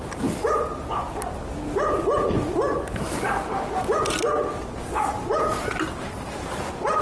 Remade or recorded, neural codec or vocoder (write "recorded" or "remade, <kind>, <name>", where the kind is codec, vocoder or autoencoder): recorded